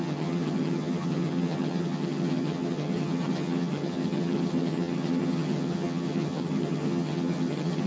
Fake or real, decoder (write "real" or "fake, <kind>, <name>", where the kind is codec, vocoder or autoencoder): fake, vocoder, HiFi-GAN